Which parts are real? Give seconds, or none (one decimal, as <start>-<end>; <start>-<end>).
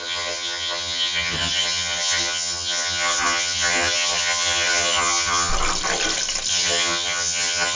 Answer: 5.5-6.5